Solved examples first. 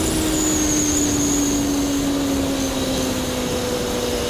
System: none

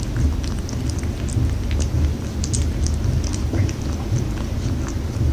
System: none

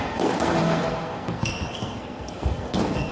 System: codec, SNAC